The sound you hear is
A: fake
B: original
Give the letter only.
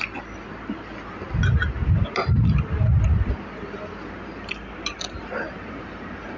B